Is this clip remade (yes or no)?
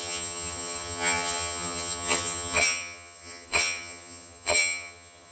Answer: yes